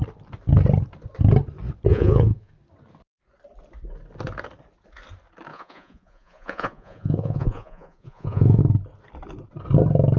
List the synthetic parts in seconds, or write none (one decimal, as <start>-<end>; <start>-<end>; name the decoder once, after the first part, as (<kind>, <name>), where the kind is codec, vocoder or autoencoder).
1.9-2.5 (vocoder, Vocos); 5.5-8.6